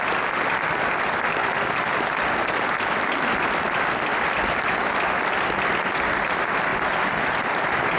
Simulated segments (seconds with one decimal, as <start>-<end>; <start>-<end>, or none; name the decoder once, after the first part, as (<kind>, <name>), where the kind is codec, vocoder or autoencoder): 1.4-5.5 (vocoder, BigVGAN v2); 6.7-7.6